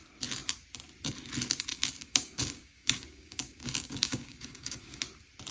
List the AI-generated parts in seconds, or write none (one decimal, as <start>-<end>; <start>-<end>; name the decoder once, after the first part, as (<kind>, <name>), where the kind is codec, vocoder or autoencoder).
1.7-5.0 (codec, DAC)